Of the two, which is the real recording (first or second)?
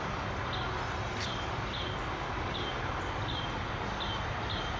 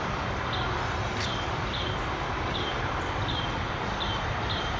first